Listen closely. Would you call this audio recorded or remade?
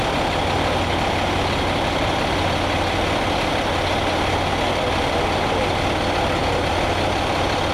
recorded